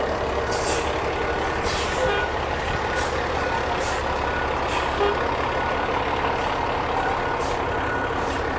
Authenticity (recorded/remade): recorded